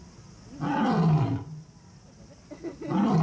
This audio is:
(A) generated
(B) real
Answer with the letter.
B